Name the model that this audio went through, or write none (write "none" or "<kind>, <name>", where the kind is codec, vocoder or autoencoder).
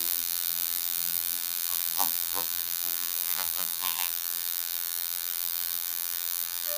vocoder, BigVGAN v2